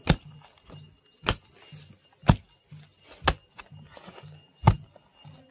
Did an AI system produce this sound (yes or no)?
no